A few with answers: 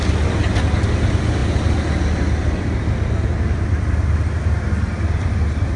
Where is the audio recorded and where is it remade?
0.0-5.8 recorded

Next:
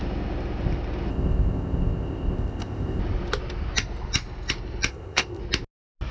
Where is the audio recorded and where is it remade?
0.0-1.1 recorded; 1.1-3.0 remade; 3.0-4.9 recorded; 4.9-5.4 remade; 5.4-6.1 recorded

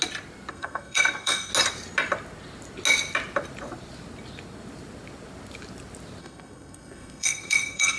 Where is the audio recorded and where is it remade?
0.0-0.5 recorded; 0.5-1.5 remade; 1.5-6.2 recorded; 6.2-8.0 remade